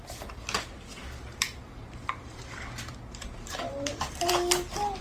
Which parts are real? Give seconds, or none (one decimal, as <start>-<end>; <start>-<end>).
0.0-1.3; 4.3-5.0